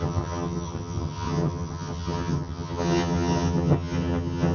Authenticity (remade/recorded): remade